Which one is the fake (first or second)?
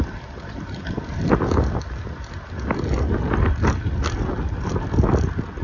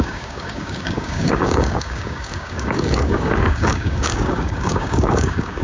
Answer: second